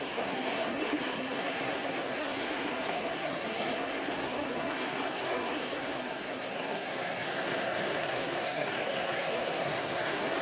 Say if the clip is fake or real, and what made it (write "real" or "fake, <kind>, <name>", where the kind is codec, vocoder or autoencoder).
fake, codec, SNAC